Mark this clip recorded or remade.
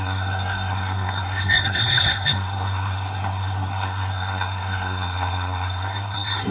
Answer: remade